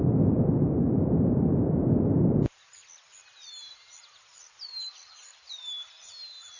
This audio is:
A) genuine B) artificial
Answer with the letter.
A